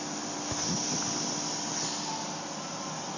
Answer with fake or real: real